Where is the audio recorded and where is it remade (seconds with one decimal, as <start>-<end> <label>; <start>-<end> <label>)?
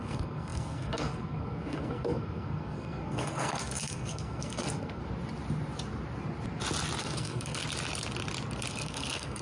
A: 0.0-5.0 remade; 5.0-7.0 recorded; 7.0-7.6 remade; 7.6-8.7 recorded; 8.7-9.4 remade